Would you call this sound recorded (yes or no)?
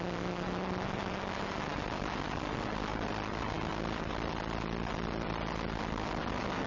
yes